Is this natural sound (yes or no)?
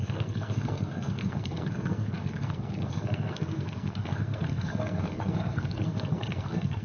no